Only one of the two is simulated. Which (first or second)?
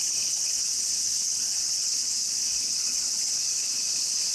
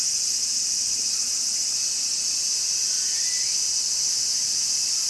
first